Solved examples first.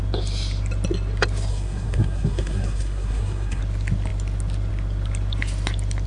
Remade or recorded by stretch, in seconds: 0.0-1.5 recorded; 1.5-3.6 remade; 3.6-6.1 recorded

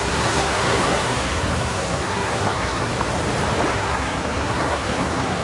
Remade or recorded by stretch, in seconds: 0.0-2.9 remade; 2.9-3.7 recorded; 3.7-5.4 remade

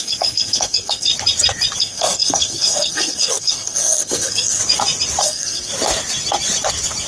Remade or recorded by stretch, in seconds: 0.0-1.1 remade; 1.1-1.8 recorded; 1.8-4.6 remade; 4.6-5.2 recorded; 5.2-5.7 remade; 5.7-7.1 recorded

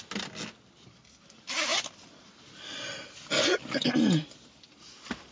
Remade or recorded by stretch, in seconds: 0.0-5.3 recorded

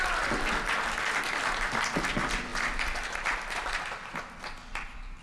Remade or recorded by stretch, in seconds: 0.0-5.2 recorded

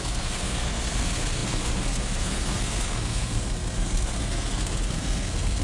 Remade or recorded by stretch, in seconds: 0.0-5.6 remade